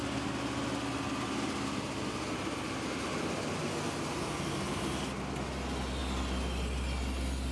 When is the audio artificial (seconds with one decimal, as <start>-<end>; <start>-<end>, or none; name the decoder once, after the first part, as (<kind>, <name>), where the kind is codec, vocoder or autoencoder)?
none